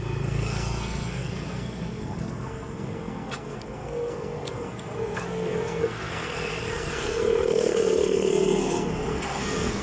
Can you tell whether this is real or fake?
fake